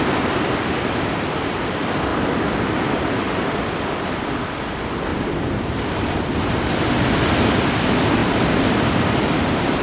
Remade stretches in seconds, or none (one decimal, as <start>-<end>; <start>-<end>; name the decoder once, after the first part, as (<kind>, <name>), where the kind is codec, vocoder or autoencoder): 2.1-4.4 (vocoder, BigVGAN v2); 5.1-6.4; 8.2-9.8